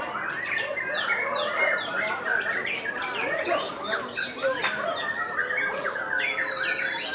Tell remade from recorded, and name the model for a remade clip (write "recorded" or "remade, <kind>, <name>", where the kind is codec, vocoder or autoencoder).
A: recorded